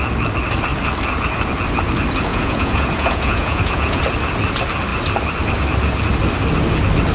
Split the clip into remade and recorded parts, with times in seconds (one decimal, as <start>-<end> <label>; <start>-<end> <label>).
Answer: 0.0-2.3 recorded; 2.3-4.0 remade; 4.0-7.1 recorded